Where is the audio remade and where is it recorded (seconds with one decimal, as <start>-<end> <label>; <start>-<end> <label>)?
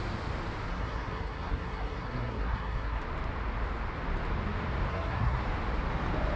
0.0-0.7 recorded; 0.7-3.0 remade; 3.0-4.9 recorded; 4.9-5.4 remade; 5.4-6.4 recorded